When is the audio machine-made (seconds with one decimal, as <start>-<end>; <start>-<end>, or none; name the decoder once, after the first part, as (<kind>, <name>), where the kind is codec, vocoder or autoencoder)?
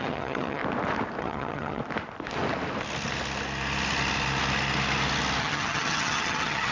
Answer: 0.0-0.6 (vocoder, HiFi-GAN); 1.2-1.8; 5.4-6.7